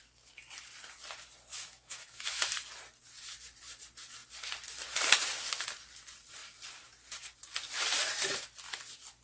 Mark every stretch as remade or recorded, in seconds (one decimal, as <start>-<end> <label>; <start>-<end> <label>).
0.0-1.5 recorded; 1.5-2.5 remade; 2.5-9.2 recorded